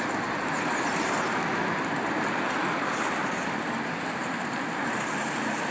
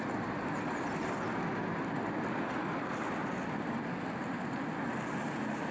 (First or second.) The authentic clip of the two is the second